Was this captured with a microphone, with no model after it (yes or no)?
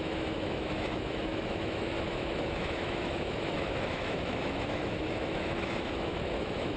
no